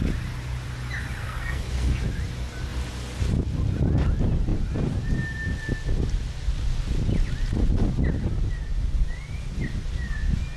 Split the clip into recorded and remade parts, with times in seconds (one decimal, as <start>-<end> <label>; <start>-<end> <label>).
0.0-1.2 recorded; 1.2-2.0 remade; 2.0-10.6 recorded